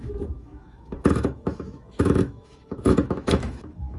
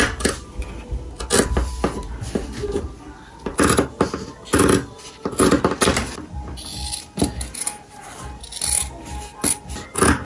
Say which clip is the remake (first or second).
first